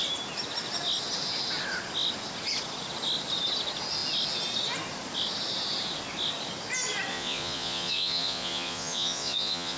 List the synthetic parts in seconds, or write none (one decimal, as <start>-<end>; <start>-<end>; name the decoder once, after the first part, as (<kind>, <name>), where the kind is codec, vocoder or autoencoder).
7.1-9.8 (vocoder, Vocos)